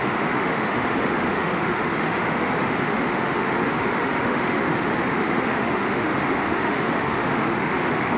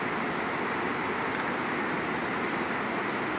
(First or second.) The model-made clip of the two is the first